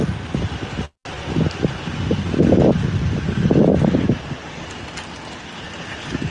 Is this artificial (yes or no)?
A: no